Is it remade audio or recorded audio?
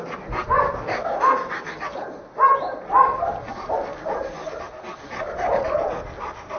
recorded